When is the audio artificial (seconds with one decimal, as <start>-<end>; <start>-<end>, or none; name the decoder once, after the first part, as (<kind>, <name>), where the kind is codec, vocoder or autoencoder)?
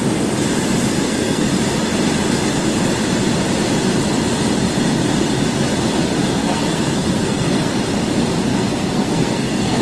0.9-1.5 (codec, SNAC); 6.4-7.8; 8.5-9.8